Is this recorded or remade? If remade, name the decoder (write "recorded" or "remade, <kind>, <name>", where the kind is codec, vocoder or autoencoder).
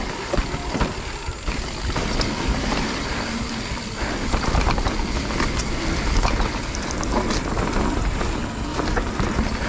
recorded